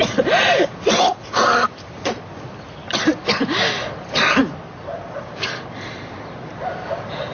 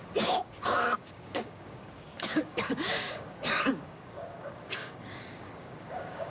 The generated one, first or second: second